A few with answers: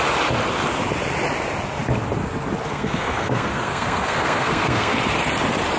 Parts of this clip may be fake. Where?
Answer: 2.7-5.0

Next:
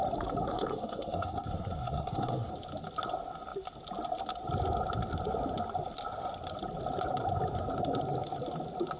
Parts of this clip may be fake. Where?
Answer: 0.5-2.5

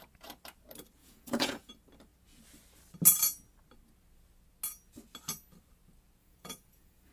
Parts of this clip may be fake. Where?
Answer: 1.0-1.7; 6.2-7.1